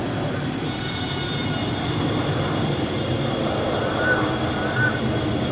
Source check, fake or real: real